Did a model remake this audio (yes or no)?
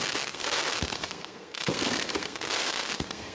yes